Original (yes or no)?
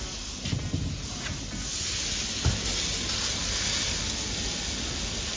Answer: yes